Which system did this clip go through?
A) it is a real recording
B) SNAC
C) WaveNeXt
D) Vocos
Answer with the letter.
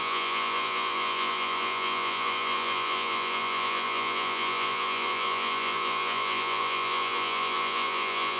D